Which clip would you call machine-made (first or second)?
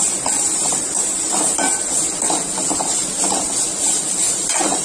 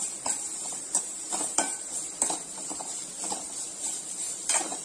second